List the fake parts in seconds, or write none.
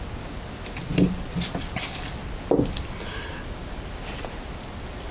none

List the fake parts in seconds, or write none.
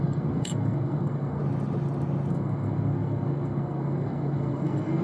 0.0-1.4 (codec, SNAC); 2.3-5.0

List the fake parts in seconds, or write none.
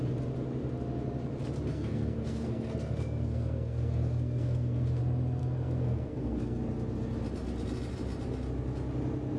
1.7-5.0 (codec, SNAC); 5.4-6.6